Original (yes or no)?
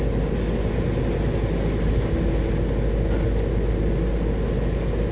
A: yes